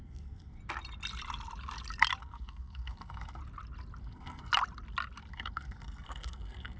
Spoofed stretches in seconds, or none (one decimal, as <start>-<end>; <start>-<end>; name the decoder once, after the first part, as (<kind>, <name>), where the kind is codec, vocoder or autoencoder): 0.0-0.6 (codec, SNAC); 2.2-3.4; 4.0-4.5; 5.3-6.8